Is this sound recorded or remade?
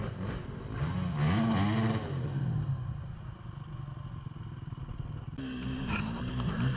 recorded